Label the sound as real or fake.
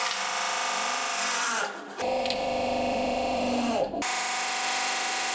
fake